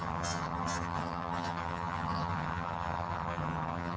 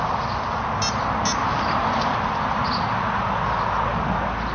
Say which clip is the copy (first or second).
first